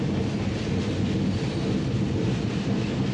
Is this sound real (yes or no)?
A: yes